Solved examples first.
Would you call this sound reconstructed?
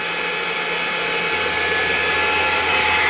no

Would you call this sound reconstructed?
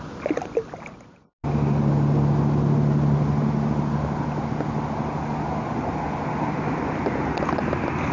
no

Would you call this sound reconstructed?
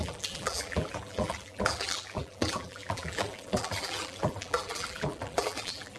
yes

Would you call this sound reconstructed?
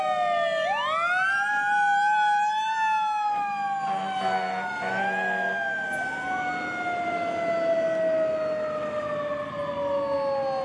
no